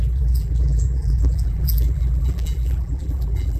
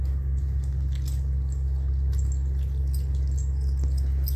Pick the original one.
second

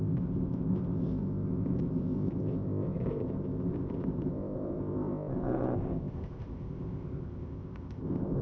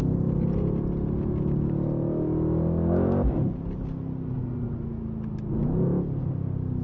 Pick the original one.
second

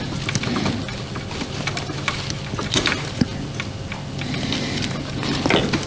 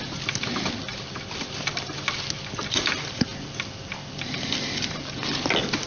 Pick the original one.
first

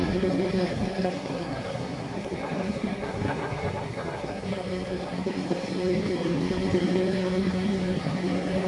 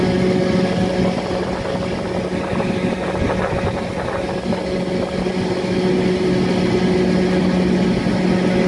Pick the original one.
second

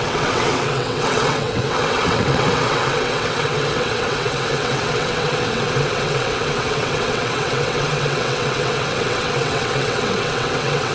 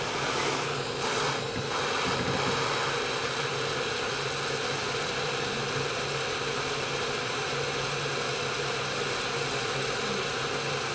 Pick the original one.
second